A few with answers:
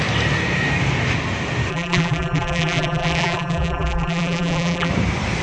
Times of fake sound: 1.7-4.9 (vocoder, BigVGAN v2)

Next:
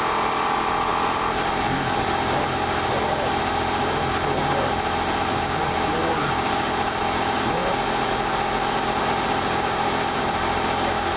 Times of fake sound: none

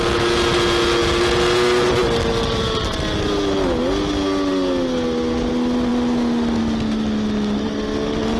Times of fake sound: none

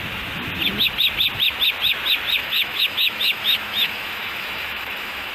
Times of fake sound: 2.4-5.3 (autoencoder, DAC-VAE)

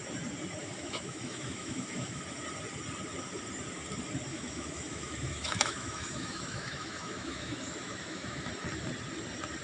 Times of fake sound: 0.6-2.2 (autoencoder, DAC-VAE); 4.3-8.5

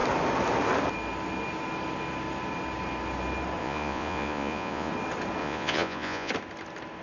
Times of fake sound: 3.6-4.9 (vocoder, Vocos); 5.4-6.3